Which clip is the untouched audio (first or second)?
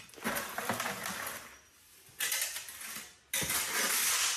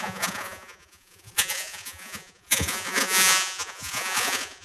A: first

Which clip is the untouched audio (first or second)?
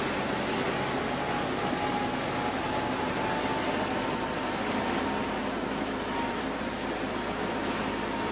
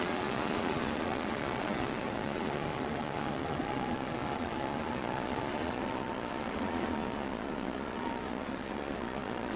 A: first